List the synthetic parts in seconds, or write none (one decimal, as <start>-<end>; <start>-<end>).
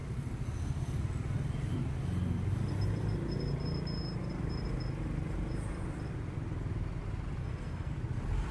7.4-7.9